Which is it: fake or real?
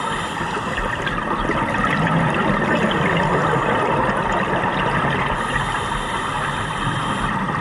real